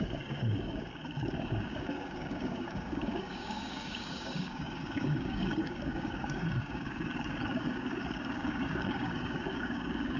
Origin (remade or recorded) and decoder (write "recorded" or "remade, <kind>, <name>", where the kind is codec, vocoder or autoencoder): remade, codec, DAC